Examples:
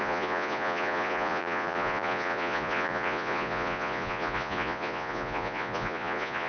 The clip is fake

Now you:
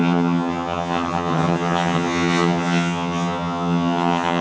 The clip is fake